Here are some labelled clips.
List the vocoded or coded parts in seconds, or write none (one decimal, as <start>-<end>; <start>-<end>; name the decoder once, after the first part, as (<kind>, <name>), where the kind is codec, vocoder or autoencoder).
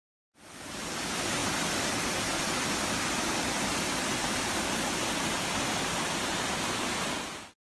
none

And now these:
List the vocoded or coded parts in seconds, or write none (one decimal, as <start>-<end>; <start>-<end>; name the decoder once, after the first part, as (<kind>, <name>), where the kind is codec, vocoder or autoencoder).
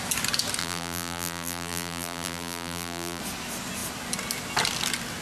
0.6-3.2 (vocoder, BigVGAN v2)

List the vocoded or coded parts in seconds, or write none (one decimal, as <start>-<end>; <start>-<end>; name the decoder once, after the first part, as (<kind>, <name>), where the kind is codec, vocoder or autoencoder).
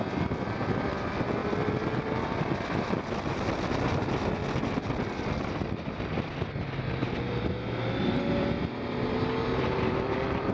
0.0-4.4 (vocoder, BigVGAN v2); 5.5-7.0; 8.3-10.5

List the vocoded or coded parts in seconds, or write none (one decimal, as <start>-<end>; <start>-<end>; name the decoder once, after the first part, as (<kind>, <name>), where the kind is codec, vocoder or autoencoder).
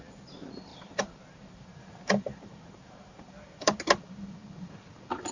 0.7-3.8 (vocoder, BigVGAN v2)